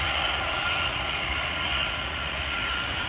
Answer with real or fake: fake